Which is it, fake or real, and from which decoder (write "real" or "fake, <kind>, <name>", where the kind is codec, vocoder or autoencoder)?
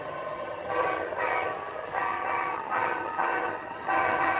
fake, vocoder, HiFi-GAN